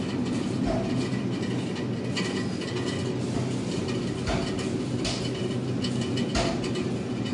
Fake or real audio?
real